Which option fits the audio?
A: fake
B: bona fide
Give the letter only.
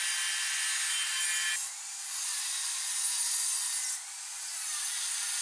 B